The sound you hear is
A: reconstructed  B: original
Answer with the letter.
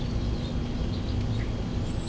B